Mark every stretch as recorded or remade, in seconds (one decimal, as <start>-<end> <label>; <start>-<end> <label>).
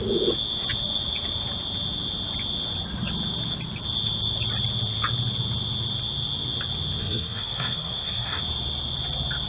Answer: 0.0-7.0 recorded; 7.0-8.4 remade; 8.4-9.5 recorded